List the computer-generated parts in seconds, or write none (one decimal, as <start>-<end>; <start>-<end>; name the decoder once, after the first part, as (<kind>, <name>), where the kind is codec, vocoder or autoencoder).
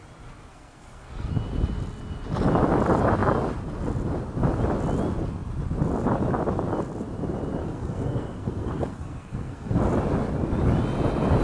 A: 0.5-1.3 (codec, SNAC); 7.6-9.8